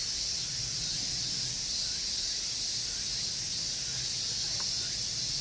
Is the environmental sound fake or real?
real